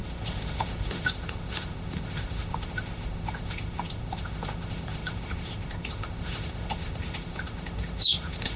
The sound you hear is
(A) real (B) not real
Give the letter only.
B